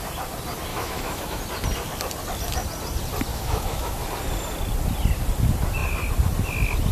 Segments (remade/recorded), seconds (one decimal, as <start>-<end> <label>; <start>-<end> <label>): 0.0-0.7 recorded; 0.7-1.4 remade; 1.4-3.3 recorded; 3.3-4.0 remade; 4.0-6.9 recorded